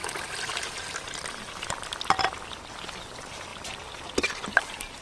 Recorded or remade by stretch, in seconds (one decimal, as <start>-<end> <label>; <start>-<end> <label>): 0.0-5.0 recorded